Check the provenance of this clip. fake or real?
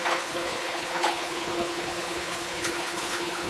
fake